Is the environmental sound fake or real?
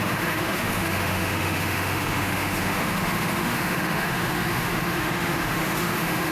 fake